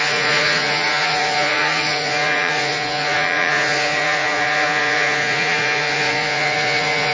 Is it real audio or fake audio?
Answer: fake